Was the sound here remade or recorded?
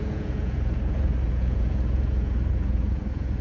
remade